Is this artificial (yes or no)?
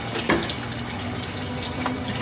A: no